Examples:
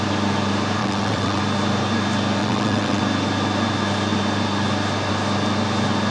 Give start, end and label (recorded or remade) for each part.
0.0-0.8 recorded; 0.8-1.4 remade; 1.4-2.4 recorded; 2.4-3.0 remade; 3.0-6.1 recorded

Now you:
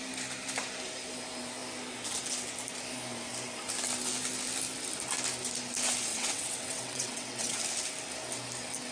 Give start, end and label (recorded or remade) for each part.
0.0-6.1 recorded; 6.1-7.6 remade; 7.6-8.9 recorded

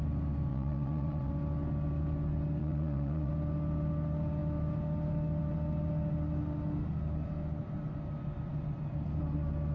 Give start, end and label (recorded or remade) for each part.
0.0-0.5 recorded; 0.5-1.3 remade; 1.3-2.6 recorded; 2.6-3.3 remade; 3.3-9.7 recorded

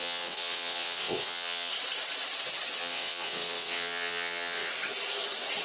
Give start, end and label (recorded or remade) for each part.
0.0-1.7 remade; 1.7-2.8 recorded; 2.8-4.7 remade; 4.7-5.6 recorded

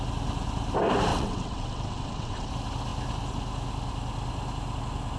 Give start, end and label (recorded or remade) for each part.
0.0-1.1 recorded; 1.1-2.5 remade; 2.5-5.2 recorded

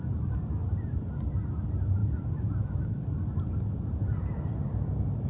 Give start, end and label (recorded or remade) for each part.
0.0-5.3 recorded

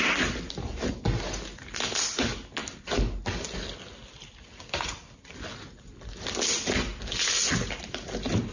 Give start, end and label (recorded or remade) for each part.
0.0-8.5 recorded

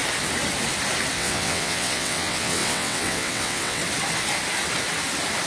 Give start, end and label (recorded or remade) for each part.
0.0-1.1 recorded; 1.1-3.8 remade; 3.8-5.5 recorded